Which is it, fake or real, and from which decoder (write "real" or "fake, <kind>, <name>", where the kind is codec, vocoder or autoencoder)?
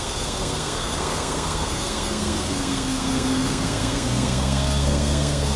fake, codec, SNAC